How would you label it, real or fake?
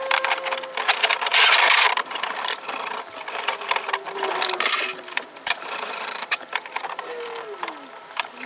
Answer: fake